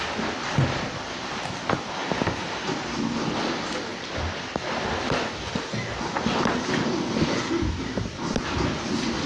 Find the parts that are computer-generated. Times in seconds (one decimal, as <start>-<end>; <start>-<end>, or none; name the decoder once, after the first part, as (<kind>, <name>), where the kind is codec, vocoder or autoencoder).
none